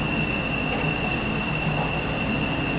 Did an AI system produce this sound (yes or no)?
no